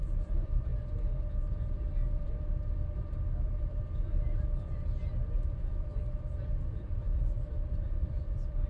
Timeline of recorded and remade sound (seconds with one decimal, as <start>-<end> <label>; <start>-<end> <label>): 0.0-0.7 remade; 0.7-1.9 recorded; 1.9-8.7 remade